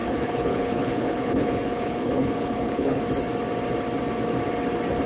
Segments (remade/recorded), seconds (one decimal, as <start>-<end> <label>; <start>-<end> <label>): 0.0-3.0 remade; 3.0-5.1 recorded